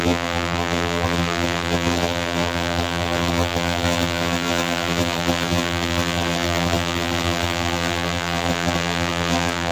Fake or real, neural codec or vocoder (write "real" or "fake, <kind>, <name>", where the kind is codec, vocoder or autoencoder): fake, vocoder, BigVGAN v2